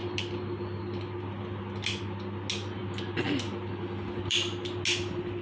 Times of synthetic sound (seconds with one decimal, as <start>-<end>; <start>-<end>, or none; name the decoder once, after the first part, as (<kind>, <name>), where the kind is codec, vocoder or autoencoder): none

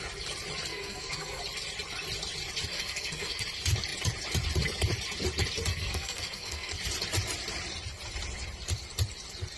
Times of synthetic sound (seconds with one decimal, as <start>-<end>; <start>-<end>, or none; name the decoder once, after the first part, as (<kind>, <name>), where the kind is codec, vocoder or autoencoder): 0.7-1.4 (codec, SNAC); 2.7-3.4; 5.7-6.8

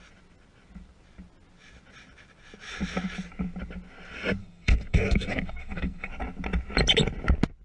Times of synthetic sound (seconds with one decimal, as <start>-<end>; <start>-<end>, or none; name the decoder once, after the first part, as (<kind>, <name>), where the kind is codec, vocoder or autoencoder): 4.4-6.1 (codec, SNAC)

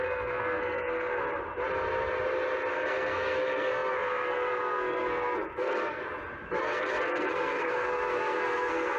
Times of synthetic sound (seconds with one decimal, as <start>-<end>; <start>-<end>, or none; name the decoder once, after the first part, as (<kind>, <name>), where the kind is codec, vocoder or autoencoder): 0.0-1.2 (codec, SNAC); 2.7-6.0; 6.6-9.0

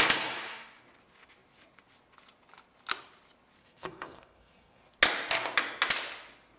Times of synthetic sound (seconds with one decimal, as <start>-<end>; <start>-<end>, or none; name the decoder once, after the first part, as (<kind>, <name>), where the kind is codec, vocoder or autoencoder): 3.6-4.8 (codec, SNAC)

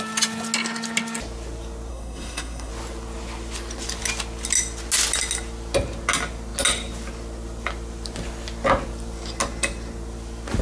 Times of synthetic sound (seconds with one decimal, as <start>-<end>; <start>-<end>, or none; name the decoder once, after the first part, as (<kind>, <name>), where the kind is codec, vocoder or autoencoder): 1.9-2.7 (codec, SNAC)

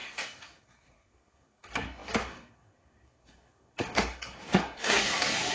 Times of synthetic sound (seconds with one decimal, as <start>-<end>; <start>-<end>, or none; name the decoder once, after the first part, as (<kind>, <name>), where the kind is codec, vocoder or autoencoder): 0.0-5.5 (codec, SNAC)

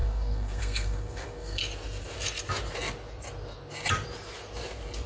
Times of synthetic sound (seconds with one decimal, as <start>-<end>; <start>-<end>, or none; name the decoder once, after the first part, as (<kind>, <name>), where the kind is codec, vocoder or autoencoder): 0.0-1.6 (codec, SNAC)